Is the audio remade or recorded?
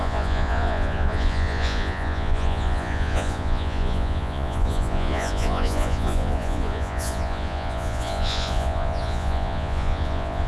remade